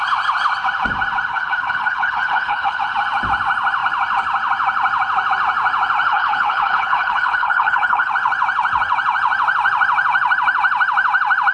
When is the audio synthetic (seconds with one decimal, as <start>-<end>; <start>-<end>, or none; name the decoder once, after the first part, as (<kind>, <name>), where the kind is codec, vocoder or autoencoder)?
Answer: 1.3-2.8 (codec, HILCodec); 6.1-8.1